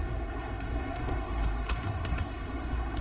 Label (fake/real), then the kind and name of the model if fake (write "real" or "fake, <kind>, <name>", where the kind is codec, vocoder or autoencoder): fake, codec, SNAC